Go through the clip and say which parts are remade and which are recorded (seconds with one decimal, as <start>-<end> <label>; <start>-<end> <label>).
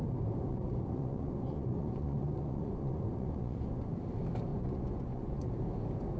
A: 0.0-0.5 recorded; 0.5-3.9 remade; 3.9-4.5 recorded; 4.5-5.5 remade; 5.5-6.2 recorded